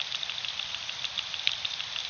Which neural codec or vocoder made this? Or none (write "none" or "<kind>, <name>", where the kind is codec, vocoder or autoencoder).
none